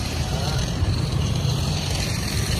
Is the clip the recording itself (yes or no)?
no